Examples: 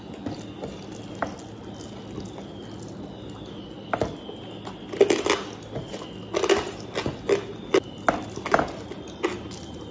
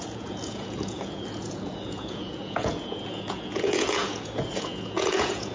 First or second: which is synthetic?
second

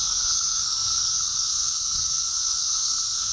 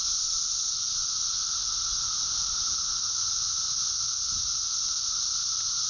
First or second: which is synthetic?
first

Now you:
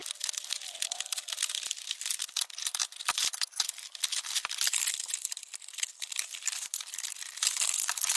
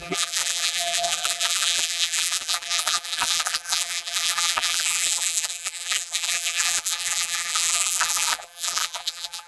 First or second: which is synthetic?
second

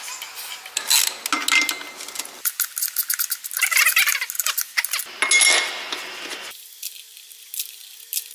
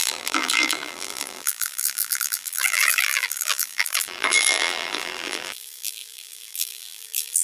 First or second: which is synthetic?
second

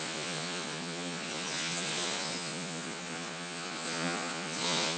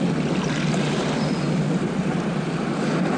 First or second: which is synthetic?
first